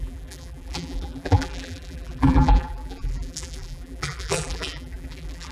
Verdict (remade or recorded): remade